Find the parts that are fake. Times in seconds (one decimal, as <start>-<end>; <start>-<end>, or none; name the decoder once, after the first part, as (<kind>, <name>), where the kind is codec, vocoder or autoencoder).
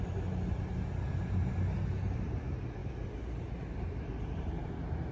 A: none